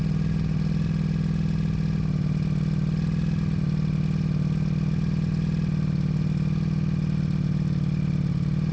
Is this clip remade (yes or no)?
no